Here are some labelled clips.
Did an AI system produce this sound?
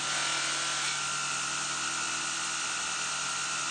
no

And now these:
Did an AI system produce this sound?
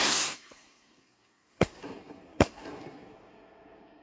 yes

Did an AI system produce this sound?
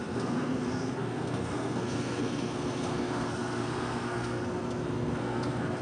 yes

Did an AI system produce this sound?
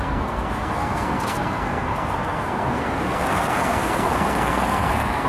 yes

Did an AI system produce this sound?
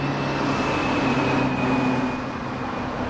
no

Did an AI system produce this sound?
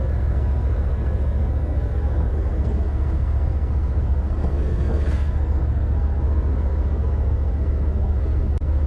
yes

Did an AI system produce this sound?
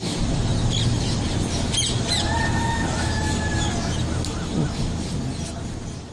no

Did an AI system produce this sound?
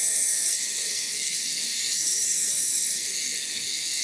yes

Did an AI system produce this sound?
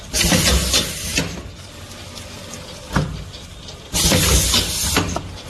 no